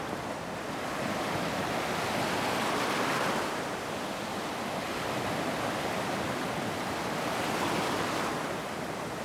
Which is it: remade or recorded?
recorded